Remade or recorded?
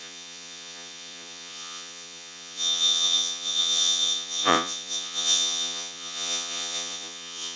remade